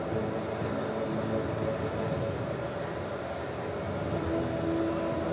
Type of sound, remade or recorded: recorded